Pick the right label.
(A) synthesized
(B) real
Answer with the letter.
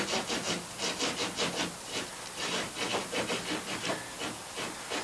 B